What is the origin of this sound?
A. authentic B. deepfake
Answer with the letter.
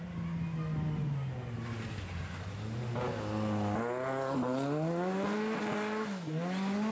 A